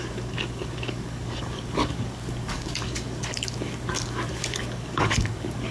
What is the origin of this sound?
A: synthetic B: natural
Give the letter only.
A